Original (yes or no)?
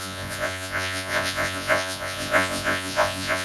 no